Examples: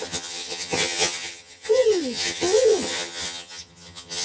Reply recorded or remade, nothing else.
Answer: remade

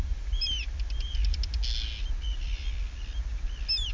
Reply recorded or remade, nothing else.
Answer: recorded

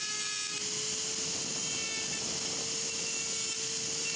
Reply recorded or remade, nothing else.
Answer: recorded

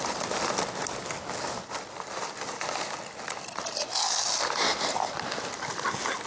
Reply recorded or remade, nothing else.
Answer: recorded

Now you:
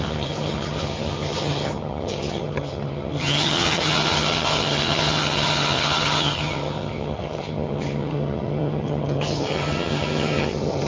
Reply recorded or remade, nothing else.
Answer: remade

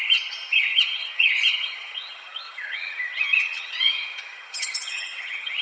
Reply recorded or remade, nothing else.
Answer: remade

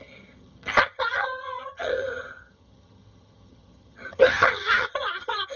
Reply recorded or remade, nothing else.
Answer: remade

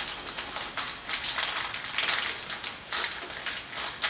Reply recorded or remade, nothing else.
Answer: recorded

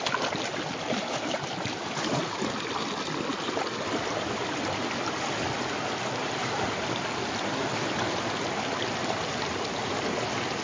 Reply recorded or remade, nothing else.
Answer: recorded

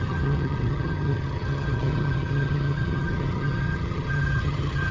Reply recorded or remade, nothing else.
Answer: remade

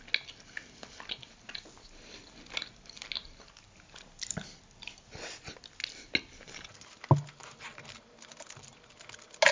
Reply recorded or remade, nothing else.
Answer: recorded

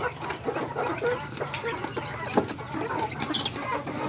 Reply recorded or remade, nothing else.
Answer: recorded